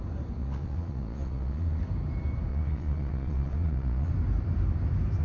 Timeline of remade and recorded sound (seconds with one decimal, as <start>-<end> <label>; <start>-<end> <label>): 0.0-0.4 recorded; 0.4-1.8 remade; 1.8-2.5 recorded; 2.5-4.1 remade; 4.1-5.2 recorded